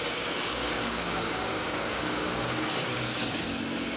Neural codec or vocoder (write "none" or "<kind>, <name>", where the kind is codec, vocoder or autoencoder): codec, DAC